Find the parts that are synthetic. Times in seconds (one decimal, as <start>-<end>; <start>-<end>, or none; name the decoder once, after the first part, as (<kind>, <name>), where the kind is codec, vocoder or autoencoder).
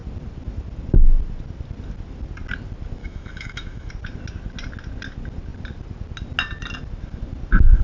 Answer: 3.0-3.9 (autoencoder, DAC-VAE)